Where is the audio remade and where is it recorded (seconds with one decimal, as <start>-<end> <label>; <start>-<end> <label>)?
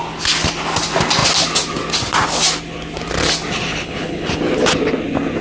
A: 0.0-3.7 recorded; 3.7-4.3 remade; 4.3-5.4 recorded